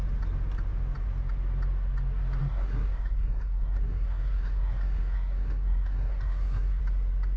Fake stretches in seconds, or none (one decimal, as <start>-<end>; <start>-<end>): 2.4-6.8